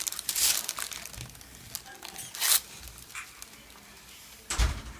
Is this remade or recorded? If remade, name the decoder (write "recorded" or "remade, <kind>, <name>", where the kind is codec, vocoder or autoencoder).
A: recorded